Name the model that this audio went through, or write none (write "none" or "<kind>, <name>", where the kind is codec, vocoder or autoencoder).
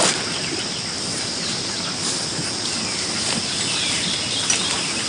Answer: none